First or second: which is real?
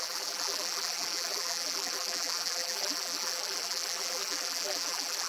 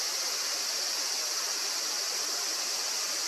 second